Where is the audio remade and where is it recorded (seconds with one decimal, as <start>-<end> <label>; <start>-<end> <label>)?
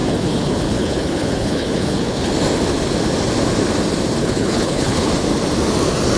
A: 0.0-2.3 remade; 2.3-4.2 recorded; 4.2-5.1 remade; 5.1-6.2 recorded